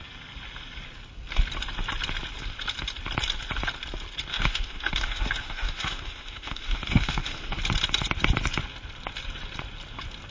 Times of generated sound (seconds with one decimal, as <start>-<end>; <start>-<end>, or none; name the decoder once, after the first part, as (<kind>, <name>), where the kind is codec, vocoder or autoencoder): 4.3-7.6 (autoencoder, DAC-VAE)